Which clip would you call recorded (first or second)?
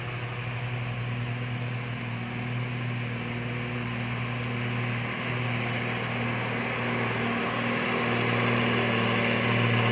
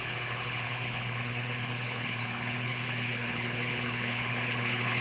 first